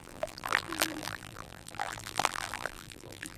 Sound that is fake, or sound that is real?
fake